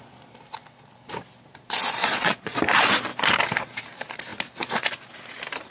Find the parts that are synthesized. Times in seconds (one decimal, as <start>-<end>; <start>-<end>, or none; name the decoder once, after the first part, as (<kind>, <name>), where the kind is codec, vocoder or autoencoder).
2.0-2.6 (vocoder, Vocos)